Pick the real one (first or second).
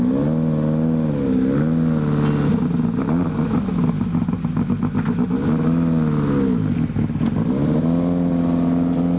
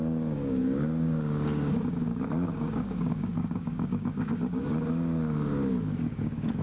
first